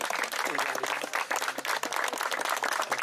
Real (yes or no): yes